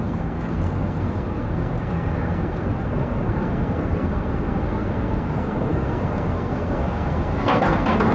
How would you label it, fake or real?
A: fake